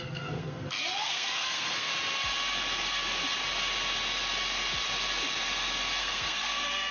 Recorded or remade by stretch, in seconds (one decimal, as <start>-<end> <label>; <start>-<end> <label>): 0.0-1.9 remade; 1.9-6.0 recorded; 6.0-6.9 remade